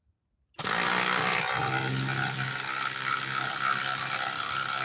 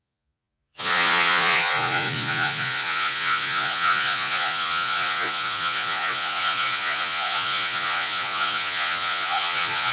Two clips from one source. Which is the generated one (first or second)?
second